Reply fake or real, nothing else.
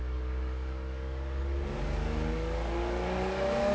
fake